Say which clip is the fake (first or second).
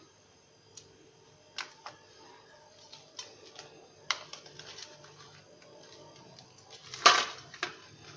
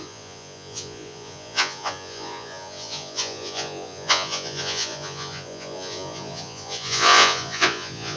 second